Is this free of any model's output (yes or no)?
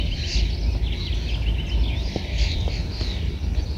yes